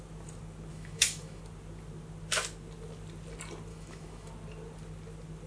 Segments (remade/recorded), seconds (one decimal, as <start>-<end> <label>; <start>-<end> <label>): 0.0-0.7 recorded; 0.7-1.4 remade; 1.4-3.7 recorded; 3.7-4.3 remade; 4.3-5.5 recorded